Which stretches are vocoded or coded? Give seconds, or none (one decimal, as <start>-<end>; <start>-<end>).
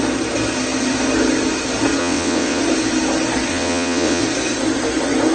2.0-2.6; 3.5-4.2